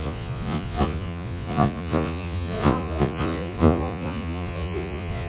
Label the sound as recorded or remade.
remade